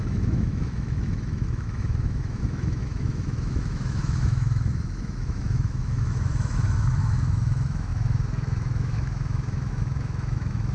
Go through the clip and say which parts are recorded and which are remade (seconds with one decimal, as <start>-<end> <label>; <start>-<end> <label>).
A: 0.0-10.7 remade

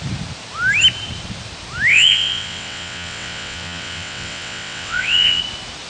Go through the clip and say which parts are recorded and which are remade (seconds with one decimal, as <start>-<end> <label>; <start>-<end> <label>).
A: 0.0-1.9 recorded; 1.9-5.4 remade; 5.4-5.9 recorded

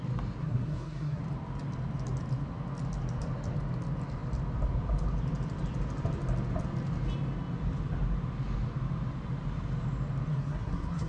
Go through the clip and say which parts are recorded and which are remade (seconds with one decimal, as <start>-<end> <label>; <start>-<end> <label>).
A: 0.0-0.4 recorded; 0.4-1.2 remade; 1.2-10.3 recorded; 10.3-11.1 remade